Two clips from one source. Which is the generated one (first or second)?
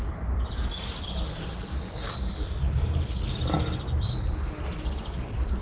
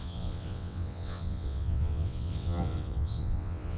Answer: second